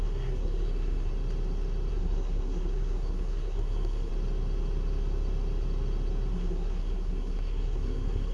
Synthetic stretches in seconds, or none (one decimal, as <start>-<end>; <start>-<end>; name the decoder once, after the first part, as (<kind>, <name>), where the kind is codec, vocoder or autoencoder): 0.0-1.1 (codec, SNAC); 1.9-4.1; 6.3-8.3